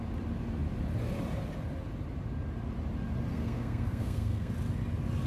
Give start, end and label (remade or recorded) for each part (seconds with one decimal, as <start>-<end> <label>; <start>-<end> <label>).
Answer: 0.0-3.3 recorded; 3.3-4.5 remade; 4.5-5.3 recorded

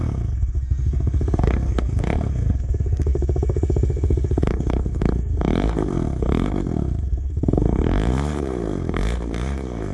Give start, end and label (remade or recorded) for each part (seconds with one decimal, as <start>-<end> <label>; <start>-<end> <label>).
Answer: 0.0-9.9 remade

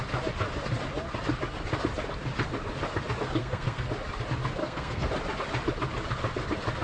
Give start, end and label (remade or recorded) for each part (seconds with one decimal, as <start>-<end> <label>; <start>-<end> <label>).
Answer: 0.0-3.4 recorded; 3.4-3.9 remade; 3.9-4.6 recorded; 4.6-5.1 remade; 5.1-6.8 recorded

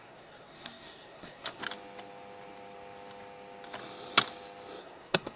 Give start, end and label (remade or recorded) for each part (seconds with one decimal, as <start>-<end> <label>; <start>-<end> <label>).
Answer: 0.0-1.6 remade; 1.6-4.8 recorded; 4.8-5.4 remade

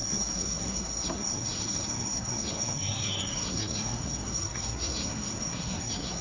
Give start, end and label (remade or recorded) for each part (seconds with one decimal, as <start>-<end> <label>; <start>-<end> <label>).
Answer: 0.0-6.2 remade

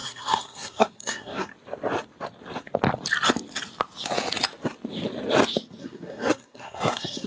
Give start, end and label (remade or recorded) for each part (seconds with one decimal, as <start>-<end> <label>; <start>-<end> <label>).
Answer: 0.0-1.5 remade; 1.5-5.8 recorded; 5.8-7.3 remade